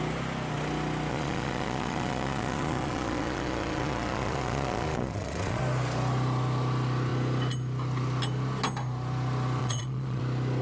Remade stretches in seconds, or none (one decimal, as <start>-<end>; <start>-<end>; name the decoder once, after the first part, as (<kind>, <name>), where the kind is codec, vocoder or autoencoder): 1.1-5.6 (vocoder, Vocos); 9.6-10.2